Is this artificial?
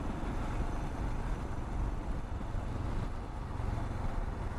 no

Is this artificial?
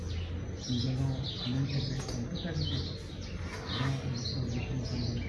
no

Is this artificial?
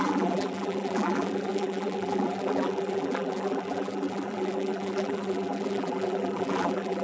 yes